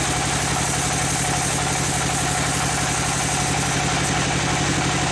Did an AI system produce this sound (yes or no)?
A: no